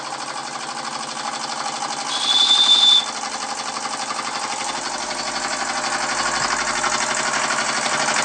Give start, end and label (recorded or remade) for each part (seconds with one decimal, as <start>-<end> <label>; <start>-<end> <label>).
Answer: 0.0-8.2 recorded